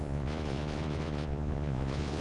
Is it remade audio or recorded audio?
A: remade